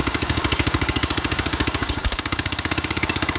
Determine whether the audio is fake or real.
fake